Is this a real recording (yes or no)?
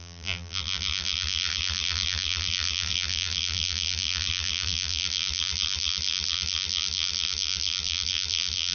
no